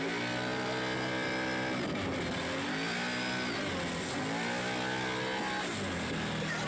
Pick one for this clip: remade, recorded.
recorded